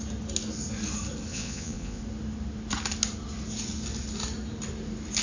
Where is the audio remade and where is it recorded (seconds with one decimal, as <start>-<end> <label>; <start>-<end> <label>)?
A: 0.0-1.3 recorded; 1.3-2.0 remade; 2.0-5.2 recorded